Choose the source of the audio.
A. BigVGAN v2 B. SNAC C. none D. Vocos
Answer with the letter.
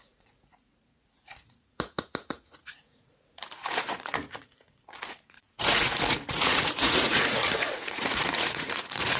D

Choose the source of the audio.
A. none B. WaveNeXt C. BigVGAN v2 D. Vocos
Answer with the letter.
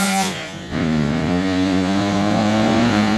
D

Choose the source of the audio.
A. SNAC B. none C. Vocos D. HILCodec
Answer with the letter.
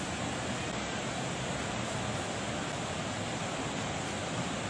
B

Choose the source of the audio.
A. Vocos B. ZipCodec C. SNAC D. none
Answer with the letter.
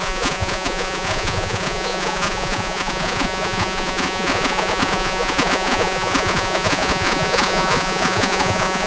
A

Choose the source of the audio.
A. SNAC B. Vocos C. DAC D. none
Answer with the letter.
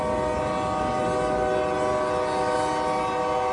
D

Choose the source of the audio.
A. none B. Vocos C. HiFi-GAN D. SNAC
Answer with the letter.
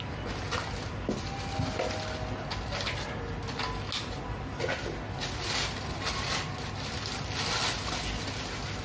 A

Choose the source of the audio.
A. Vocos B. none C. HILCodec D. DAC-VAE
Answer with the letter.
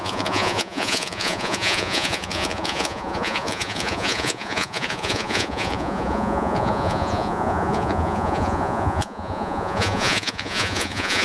A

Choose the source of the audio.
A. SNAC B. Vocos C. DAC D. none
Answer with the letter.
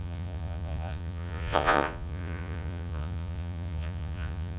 B